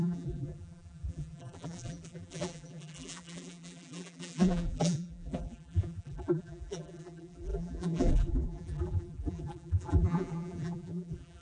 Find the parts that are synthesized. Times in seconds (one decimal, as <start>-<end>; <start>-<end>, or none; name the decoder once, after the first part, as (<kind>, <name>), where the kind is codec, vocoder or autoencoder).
0.0-11.4 (vocoder, BigVGAN v2)